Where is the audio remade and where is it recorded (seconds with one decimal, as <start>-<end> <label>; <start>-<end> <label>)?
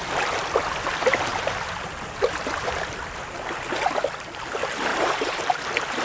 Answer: 0.0-4.9 recorded; 4.9-5.4 remade; 5.4-6.0 recorded